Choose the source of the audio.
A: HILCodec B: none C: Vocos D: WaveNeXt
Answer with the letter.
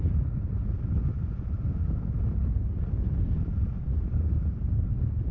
B